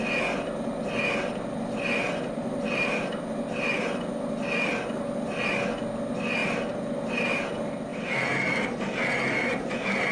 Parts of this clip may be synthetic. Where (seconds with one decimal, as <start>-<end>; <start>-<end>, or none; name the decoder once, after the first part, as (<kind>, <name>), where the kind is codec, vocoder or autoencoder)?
6.4-7.1 (vocoder, BigVGAN v2)